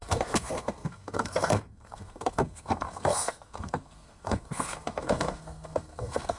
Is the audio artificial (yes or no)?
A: yes